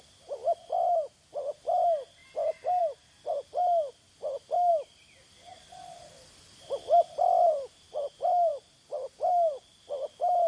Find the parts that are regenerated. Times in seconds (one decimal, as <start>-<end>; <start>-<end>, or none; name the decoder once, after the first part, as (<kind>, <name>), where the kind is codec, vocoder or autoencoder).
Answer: 3.3-4.7 (vocoder, BigVGAN v2); 5.5-8.0; 8.5-9.7